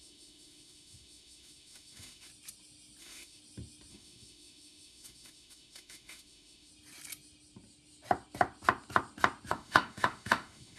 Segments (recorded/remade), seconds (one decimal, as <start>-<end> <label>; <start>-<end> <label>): 0.0-2.3 remade; 2.3-3.0 recorded; 3.0-3.4 remade; 3.4-3.9 recorded; 3.9-6.7 remade; 6.7-9.5 recorded; 9.5-10.8 remade